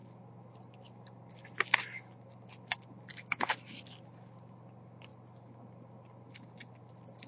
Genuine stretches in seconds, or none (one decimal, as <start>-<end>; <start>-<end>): 0.0-3.1; 3.8-7.3